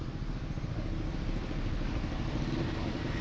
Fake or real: real